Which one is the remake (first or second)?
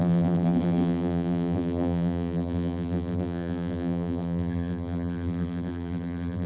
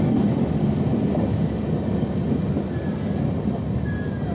first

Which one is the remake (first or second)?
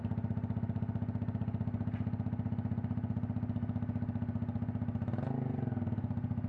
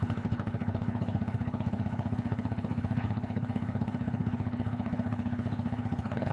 second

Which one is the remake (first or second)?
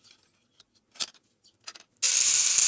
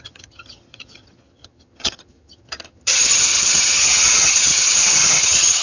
second